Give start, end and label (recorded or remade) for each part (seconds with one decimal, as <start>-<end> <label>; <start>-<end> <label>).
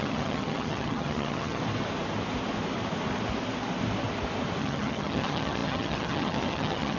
0.0-1.6 remade; 1.6-4.6 recorded; 4.6-7.0 remade